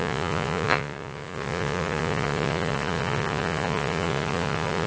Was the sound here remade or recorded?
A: remade